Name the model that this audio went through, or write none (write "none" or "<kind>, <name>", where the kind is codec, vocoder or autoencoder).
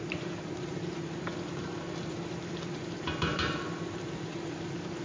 vocoder, BigVGAN v2